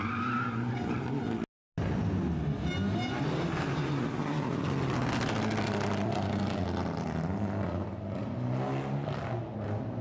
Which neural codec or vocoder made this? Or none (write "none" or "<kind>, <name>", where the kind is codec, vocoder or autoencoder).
none